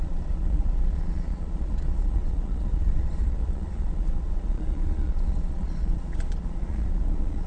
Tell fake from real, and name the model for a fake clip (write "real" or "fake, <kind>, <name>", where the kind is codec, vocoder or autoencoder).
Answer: fake, vocoder, Vocos